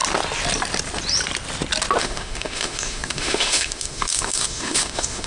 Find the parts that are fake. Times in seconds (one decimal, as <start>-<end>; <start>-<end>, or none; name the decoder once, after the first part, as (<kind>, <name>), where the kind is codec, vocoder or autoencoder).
2.0-5.3 (autoencoder, DAC-VAE)

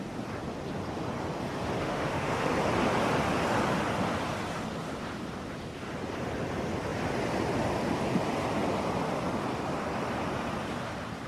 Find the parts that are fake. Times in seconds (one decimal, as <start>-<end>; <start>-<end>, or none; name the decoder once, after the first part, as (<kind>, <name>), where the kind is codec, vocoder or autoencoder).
1.8-2.5 (autoencoder, DAC-VAE)

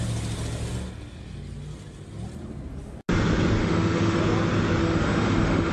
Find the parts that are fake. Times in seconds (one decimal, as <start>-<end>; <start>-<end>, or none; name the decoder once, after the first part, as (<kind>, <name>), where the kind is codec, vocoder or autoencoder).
3.6-4.2 (autoencoder, DAC-VAE); 4.8-5.7

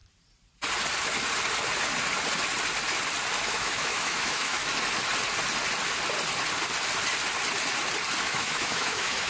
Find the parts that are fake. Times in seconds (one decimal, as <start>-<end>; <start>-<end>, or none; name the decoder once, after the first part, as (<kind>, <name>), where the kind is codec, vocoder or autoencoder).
3.4-4.6 (autoencoder, DAC-VAE); 8.2-9.3

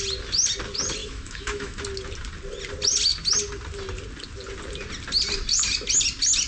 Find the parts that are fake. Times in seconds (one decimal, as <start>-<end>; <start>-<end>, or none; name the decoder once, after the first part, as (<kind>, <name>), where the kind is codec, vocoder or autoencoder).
1.0-1.8 (autoencoder, DAC-VAE)